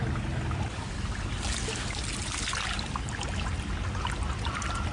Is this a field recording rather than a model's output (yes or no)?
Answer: yes